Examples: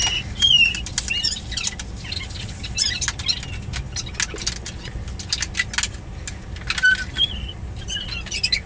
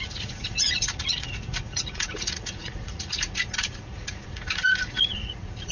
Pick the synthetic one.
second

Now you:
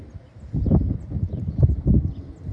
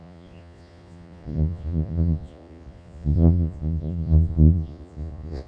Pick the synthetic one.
second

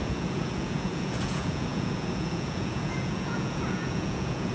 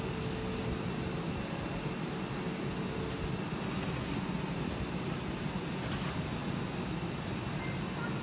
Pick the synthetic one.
first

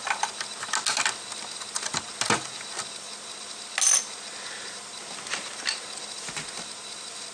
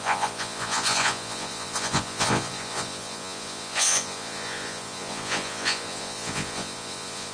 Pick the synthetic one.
second